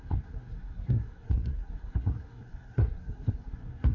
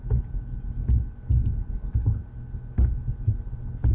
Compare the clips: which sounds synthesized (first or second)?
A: first